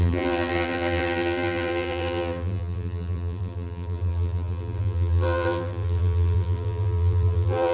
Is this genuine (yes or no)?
no